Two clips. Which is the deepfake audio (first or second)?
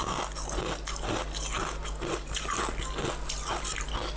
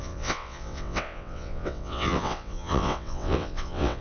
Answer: second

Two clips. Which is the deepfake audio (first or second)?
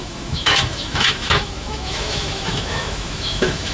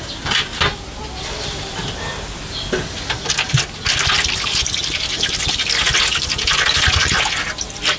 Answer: first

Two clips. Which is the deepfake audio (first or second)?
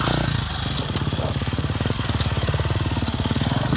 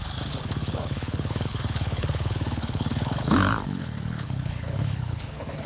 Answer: second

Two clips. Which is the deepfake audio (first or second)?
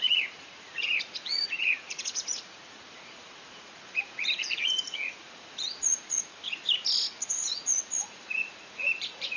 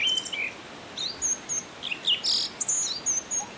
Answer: first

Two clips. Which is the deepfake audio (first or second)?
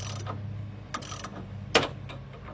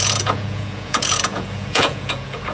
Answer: second